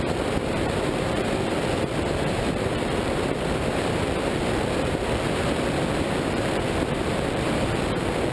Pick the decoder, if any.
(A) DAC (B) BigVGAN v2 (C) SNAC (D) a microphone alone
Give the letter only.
B